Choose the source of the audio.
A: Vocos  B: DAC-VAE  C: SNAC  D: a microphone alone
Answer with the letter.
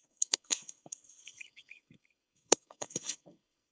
C